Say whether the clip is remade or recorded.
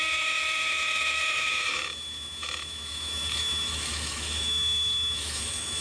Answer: remade